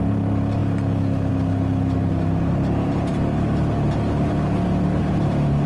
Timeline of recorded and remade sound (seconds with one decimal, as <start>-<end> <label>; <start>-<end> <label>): 0.0-5.7 recorded